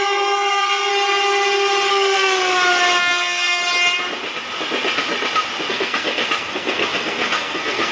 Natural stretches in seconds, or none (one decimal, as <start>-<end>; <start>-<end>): 0.9-1.9; 2.5-3.0; 3.6-5.7

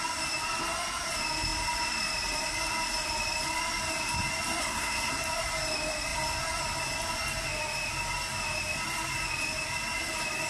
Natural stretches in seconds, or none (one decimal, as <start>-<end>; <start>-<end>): 0.0-4.6; 5.1-10.5

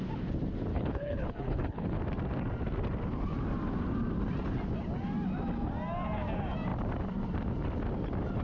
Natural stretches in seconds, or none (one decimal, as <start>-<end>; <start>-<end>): 0.0-0.7; 2.0-8.4

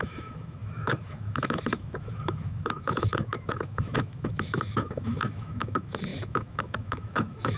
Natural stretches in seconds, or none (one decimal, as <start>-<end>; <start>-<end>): none